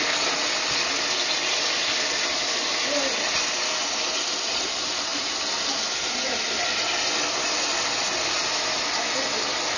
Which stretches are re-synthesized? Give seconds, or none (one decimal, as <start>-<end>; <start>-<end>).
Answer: none